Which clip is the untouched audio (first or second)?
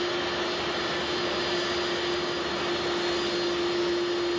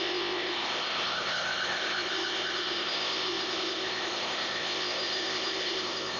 first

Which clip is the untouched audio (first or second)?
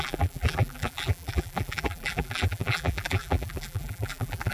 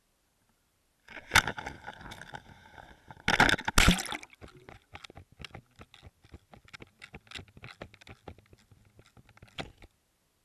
second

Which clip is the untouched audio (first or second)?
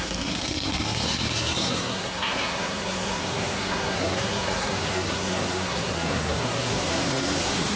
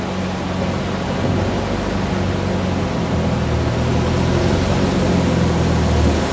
second